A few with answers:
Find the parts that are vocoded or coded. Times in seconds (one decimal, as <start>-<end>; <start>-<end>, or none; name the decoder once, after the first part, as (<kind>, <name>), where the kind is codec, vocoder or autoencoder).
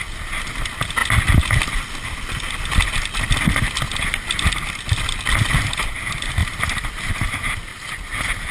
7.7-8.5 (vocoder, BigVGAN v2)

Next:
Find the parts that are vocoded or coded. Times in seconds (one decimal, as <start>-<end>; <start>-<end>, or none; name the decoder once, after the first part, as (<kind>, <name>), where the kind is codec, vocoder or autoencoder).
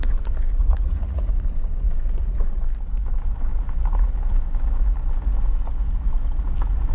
0.6-1.3 (vocoder, Vocos)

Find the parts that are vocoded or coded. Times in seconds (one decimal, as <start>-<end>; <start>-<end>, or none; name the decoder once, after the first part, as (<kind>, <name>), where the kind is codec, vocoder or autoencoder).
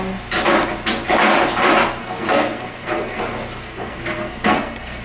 2.0-3.2 (codec, SNAC); 3.6-5.0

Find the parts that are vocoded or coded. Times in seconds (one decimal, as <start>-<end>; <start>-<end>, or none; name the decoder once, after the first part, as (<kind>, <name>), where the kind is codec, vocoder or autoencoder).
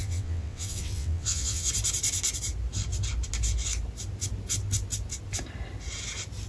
0.0-1.7 (vocoder, WaveNeXt)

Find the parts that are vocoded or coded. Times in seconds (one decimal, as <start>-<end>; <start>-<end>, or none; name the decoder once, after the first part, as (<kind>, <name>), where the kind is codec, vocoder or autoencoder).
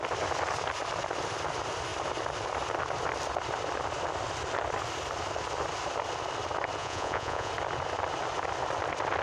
6.8-7.5 (vocoder, Vocos)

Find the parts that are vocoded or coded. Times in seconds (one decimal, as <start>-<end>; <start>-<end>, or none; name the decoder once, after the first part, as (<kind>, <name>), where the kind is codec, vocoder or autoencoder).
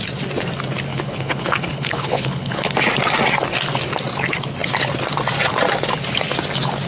0.9-2.7 (codec, HILCodec)